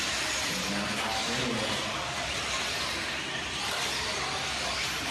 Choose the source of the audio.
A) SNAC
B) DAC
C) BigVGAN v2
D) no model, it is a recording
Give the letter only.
D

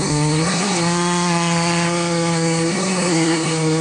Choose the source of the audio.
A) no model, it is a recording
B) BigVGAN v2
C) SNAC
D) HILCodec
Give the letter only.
C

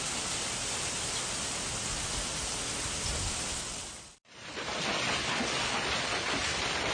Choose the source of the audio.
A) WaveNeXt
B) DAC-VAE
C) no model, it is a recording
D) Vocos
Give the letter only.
C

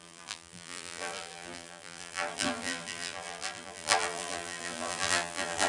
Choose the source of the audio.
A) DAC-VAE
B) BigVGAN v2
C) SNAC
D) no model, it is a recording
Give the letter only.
B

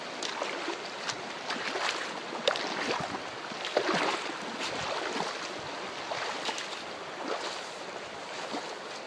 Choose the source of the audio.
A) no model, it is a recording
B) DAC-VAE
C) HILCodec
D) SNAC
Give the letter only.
A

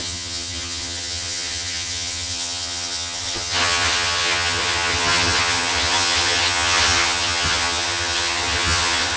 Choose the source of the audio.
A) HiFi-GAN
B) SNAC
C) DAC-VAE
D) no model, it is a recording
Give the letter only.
A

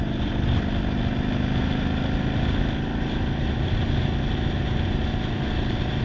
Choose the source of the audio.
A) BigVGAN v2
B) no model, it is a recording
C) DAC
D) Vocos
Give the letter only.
B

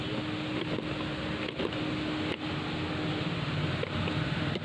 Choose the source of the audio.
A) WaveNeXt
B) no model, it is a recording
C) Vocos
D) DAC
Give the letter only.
B